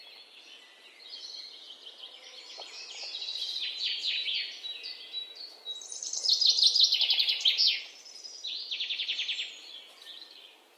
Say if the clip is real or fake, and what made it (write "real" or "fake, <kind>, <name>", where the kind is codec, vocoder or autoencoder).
real